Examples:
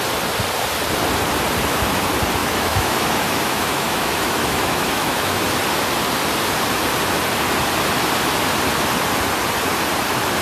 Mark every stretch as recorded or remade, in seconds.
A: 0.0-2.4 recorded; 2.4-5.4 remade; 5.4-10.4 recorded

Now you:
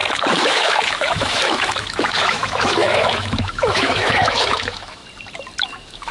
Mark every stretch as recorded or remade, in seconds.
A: 0.0-5.0 remade; 5.0-5.6 recorded; 5.6-6.1 remade

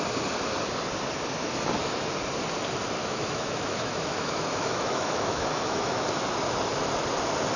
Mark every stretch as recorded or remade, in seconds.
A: 0.0-3.0 recorded; 3.0-6.0 remade; 6.0-7.6 recorded

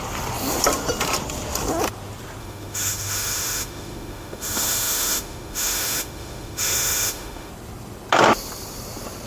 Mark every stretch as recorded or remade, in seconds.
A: 0.0-2.4 recorded; 2.4-7.5 remade; 7.5-9.3 recorded

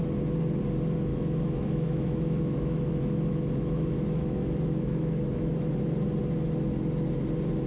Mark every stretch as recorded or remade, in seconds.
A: 0.0-1.1 recorded; 1.1-5.7 remade; 5.7-7.7 recorded